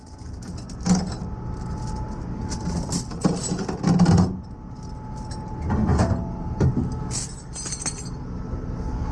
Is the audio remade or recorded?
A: recorded